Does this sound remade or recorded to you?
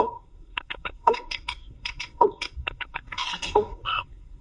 remade